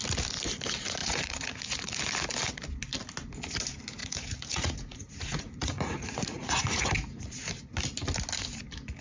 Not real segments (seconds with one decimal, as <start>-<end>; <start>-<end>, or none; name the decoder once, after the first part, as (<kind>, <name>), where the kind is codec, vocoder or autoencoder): 1.0-2.0 (vocoder, Vocos); 4.0-6.8